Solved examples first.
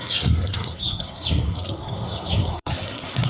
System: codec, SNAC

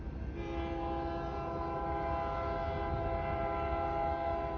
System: none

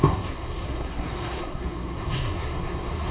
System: codec, SNAC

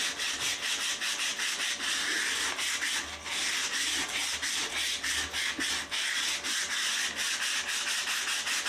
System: none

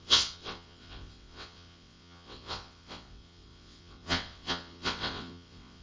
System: vocoder, WaveNeXt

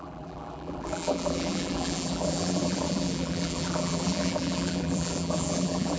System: vocoder, BigVGAN v2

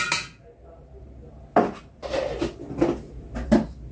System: none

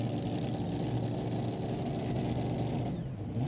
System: none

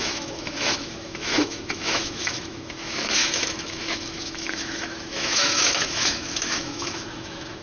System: autoencoder, DAC-VAE